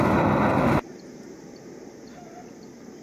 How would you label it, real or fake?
real